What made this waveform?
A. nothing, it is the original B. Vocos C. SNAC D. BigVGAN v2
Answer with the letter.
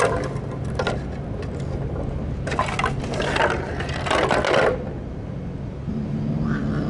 A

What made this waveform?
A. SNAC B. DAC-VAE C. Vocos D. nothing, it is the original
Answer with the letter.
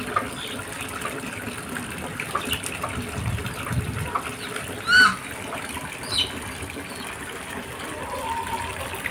D